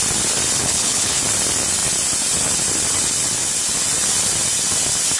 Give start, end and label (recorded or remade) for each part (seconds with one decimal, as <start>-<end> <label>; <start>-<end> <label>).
0.0-0.6 recorded; 0.6-1.2 remade; 1.2-5.2 recorded